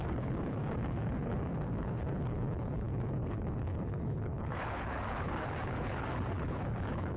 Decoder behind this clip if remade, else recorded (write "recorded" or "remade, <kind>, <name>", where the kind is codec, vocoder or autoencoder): remade, codec, HILCodec